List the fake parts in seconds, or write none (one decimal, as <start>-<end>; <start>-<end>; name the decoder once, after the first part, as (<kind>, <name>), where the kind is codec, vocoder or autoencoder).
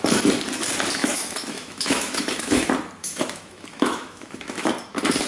1.0-2.6 (autoencoder, DAC-VAE); 3.0-4.7